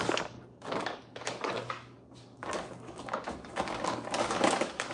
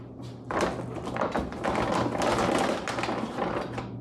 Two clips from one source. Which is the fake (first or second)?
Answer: first